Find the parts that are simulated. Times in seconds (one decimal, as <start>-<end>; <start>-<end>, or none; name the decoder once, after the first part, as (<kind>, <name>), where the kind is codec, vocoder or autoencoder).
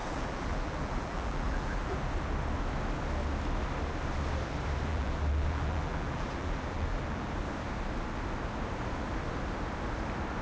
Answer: 0.0-2.0 (vocoder, BigVGAN v2); 4.9-7.3